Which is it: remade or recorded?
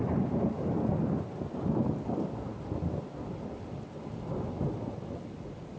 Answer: recorded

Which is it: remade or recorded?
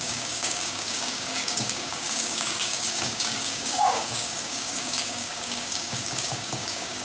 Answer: remade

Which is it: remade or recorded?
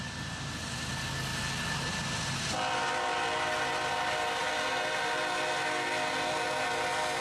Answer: recorded